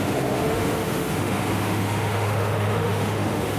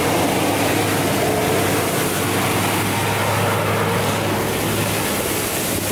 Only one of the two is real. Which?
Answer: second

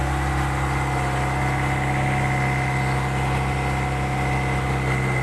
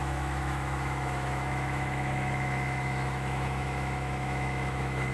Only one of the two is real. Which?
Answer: first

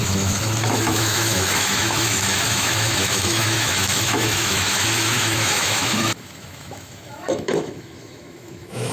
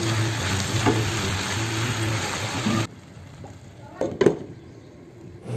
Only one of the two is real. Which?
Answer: second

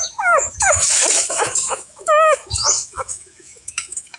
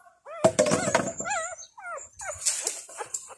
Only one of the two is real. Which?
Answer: second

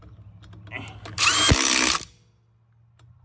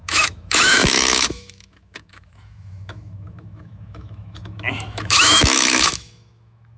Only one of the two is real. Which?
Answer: first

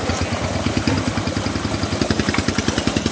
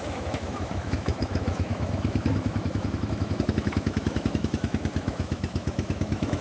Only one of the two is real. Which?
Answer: first